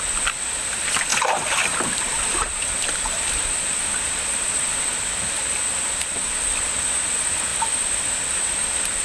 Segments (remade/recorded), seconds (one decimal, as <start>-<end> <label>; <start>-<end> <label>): 0.0-7.5 recorded; 7.5-8.4 remade; 8.4-9.0 recorded